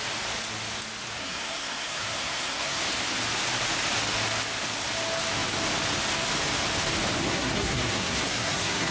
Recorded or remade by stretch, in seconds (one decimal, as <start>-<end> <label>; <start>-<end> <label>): 0.0-1.2 recorded; 1.2-2.8 remade; 2.8-7.2 recorded; 7.2-8.9 remade

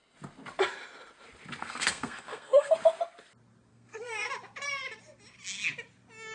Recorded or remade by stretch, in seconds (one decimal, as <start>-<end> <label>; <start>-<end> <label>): 0.0-1.6 recorded; 1.6-2.7 remade; 2.7-3.7 recorded; 3.7-4.3 remade; 4.3-6.3 recorded

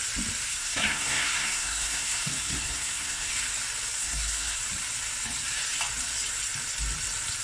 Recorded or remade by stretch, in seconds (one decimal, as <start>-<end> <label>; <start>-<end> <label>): 0.0-0.5 recorded; 0.5-3.3 remade; 3.3-4.0 recorded; 4.0-4.6 remade; 4.6-7.4 recorded

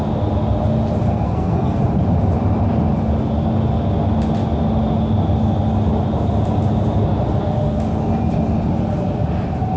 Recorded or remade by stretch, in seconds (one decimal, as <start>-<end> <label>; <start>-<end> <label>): 0.0-1.0 recorded; 1.0-1.8 remade; 1.8-9.8 recorded